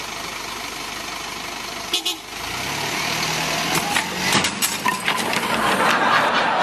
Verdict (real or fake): real